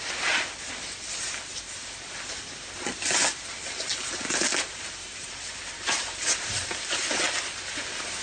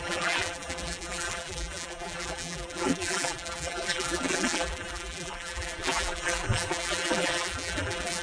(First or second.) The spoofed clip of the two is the second